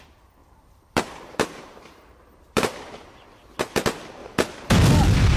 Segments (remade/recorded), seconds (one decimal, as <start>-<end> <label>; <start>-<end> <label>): 0.0-0.4 recorded; 0.4-3.6 remade; 3.6-4.2 recorded; 4.2-4.7 remade; 4.7-5.4 recorded